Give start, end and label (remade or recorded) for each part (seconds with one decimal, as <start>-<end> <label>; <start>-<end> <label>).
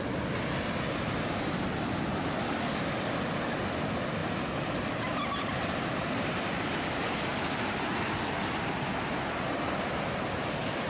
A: 0.0-4.2 recorded; 4.2-5.5 remade; 5.5-7.3 recorded; 7.3-7.9 remade; 7.9-10.9 recorded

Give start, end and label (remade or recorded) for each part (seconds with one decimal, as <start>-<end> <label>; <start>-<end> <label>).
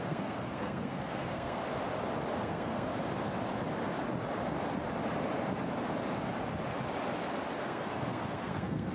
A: 0.0-1.6 remade; 1.6-2.3 recorded; 2.3-2.9 remade; 2.9-7.6 recorded; 7.6-8.9 remade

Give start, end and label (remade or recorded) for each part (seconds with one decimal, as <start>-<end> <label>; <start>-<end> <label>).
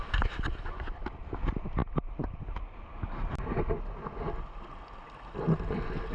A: 0.0-6.1 recorded